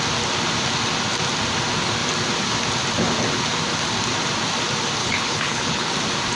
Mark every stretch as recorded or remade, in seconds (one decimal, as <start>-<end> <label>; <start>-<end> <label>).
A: 0.0-5.0 recorded; 5.0-5.9 remade; 5.9-6.4 recorded